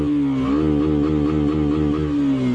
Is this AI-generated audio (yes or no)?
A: no